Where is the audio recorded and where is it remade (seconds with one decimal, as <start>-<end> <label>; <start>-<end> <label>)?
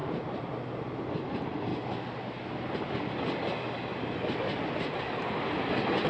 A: 0.0-0.5 remade; 0.5-6.1 recorded